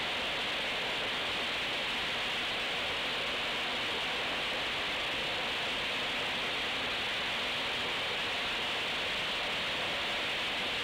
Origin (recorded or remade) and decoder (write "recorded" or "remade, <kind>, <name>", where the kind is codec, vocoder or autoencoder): recorded